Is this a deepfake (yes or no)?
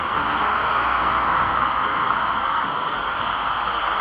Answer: yes